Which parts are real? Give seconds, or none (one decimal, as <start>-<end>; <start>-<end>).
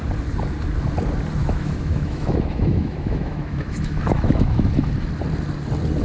0.0-1.4; 4.7-6.0